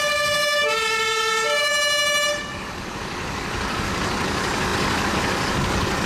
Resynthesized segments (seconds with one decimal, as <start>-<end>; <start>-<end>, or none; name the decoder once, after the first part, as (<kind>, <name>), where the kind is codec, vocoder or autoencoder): 0.0-1.7 (codec, DAC); 2.4-6.1